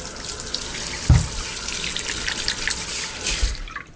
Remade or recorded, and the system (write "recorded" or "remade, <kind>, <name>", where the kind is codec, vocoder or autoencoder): recorded